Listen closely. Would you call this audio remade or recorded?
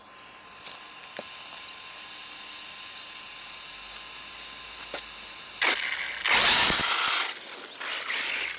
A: recorded